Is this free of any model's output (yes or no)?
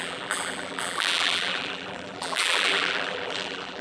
no